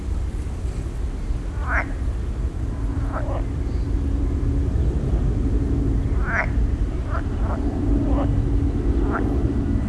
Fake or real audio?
real